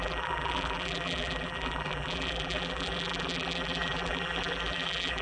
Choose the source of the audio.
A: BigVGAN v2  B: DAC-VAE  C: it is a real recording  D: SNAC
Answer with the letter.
A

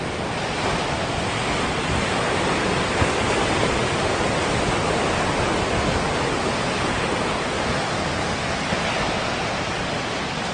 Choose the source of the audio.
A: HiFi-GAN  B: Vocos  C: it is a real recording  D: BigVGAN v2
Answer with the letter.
C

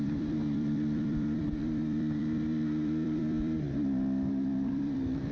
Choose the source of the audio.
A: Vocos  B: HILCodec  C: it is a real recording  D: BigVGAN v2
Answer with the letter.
D